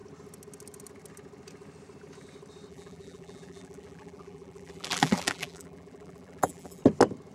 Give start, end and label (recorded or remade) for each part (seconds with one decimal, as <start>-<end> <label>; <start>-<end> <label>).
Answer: 0.0-2.7 recorded; 2.7-6.8 remade; 6.8-7.3 recorded